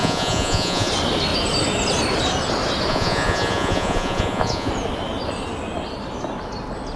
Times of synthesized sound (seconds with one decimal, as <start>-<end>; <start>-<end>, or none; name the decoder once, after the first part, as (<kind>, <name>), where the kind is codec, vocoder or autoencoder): 0.0-0.9 (vocoder, Vocos); 2.9-4.7